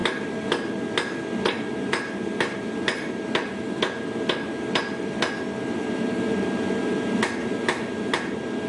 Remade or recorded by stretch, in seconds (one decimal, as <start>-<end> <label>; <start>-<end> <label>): 0.0-8.7 recorded